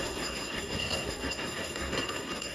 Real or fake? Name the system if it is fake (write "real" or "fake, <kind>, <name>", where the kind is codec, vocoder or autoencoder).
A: fake, codec, SNAC